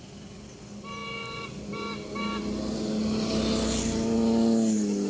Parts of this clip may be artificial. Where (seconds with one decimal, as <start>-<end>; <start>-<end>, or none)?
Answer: none